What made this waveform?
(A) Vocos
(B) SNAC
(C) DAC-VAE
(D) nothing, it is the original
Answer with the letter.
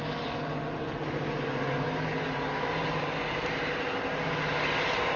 D